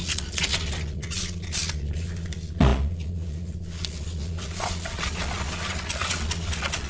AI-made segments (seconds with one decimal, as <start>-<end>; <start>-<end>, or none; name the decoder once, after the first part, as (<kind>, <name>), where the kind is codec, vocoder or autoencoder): 0.0-6.9 (vocoder, Vocos)